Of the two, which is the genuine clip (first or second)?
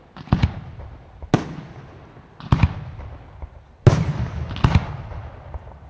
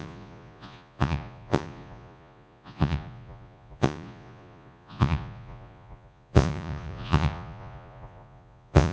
first